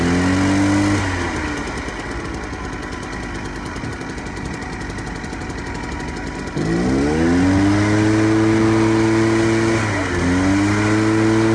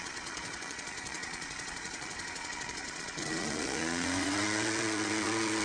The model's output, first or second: second